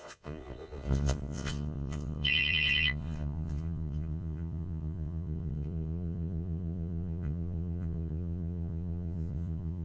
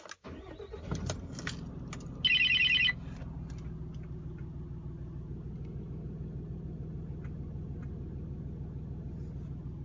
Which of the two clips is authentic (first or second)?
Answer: second